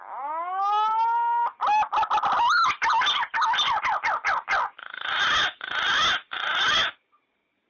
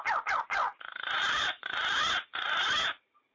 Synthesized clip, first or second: second